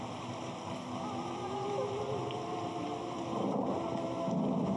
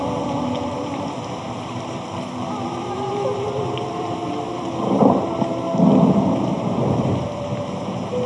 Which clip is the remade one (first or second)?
second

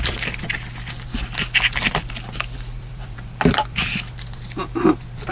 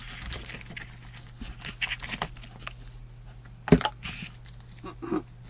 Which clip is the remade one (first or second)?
first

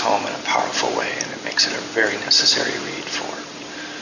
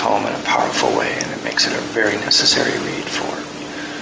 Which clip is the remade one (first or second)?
first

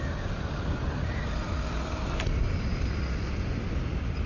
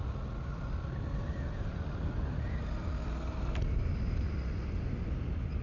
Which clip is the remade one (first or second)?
first